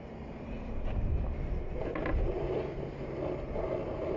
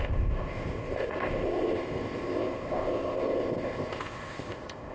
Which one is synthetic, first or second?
second